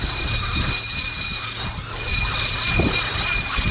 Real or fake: real